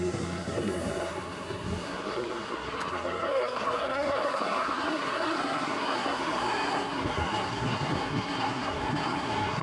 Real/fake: fake